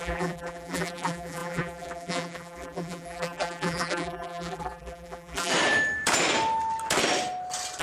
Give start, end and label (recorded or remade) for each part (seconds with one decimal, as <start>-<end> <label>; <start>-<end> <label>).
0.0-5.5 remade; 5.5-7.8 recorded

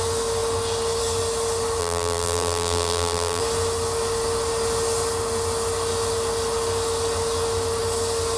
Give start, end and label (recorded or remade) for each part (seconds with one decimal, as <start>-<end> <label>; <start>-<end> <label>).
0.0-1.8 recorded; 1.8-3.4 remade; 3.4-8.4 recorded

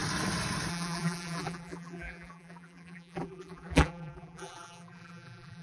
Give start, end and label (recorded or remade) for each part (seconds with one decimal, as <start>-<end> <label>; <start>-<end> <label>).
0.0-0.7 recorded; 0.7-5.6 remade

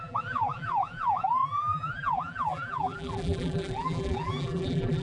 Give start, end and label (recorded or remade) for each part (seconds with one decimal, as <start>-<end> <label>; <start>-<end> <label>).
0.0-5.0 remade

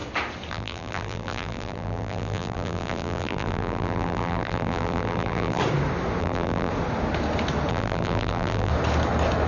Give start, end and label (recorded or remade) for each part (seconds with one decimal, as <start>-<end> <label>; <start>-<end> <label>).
0.0-0.5 recorded; 0.5-5.6 remade; 5.6-6.2 recorded; 6.2-6.7 remade; 6.7-7.7 recorded; 7.7-8.7 remade; 8.7-9.5 recorded

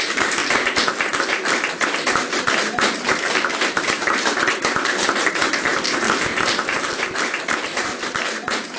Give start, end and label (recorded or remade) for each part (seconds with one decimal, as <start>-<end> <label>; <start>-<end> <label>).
0.0-0.4 remade; 0.4-2.6 recorded; 2.6-5.7 remade; 5.7-6.8 recorded; 6.8-8.8 remade